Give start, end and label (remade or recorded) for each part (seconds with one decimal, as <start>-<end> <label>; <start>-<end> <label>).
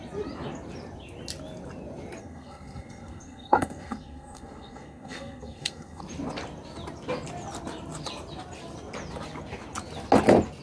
0.0-2.2 recorded; 2.2-6.0 remade; 6.0-10.6 recorded